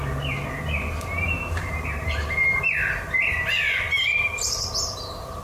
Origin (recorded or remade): remade